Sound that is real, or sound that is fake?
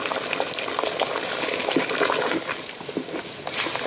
real